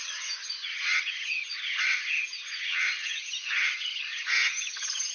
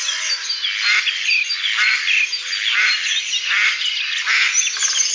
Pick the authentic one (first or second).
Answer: second